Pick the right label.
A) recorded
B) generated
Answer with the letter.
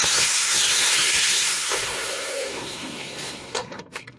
B